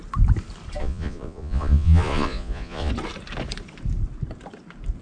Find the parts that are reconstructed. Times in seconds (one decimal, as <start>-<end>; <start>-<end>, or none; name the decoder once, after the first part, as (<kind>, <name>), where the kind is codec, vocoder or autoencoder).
0.8-2.9 (vocoder, Vocos)